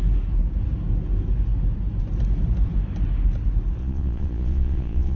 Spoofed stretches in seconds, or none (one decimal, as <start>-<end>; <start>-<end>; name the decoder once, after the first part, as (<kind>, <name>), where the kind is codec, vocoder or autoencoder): 3.8-5.2 (vocoder, Vocos)